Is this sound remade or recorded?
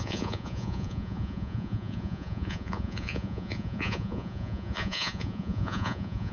remade